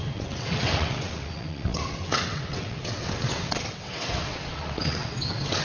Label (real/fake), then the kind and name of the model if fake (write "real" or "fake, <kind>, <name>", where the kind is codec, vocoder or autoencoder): fake, vocoder, WaveNeXt